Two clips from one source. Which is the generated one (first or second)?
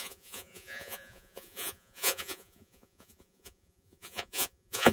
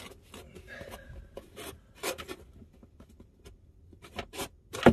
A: first